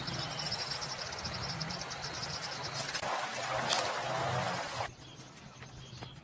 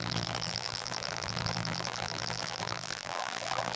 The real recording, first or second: first